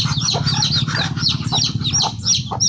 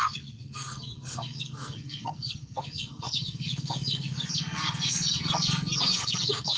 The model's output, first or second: second